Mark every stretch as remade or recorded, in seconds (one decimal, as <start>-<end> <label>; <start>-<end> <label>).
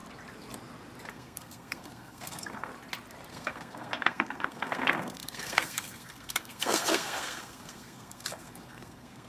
0.0-1.1 recorded; 1.1-2.7 remade; 2.7-3.3 recorded; 3.3-9.3 remade